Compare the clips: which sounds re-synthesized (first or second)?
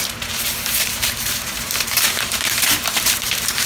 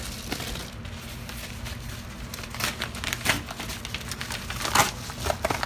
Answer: first